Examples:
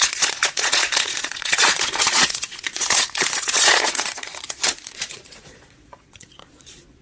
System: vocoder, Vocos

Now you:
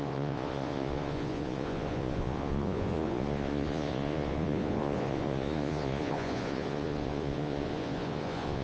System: vocoder, Vocos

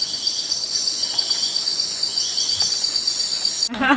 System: vocoder, Vocos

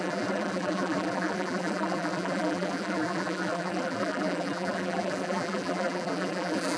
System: vocoder, BigVGAN v2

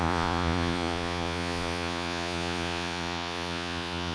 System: vocoder, Vocos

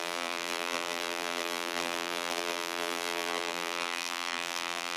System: vocoder, BigVGAN v2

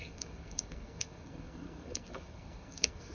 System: codec, SNAC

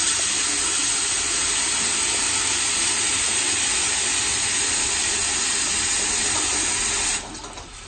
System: none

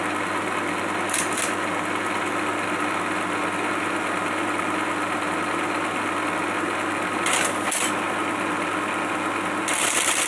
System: none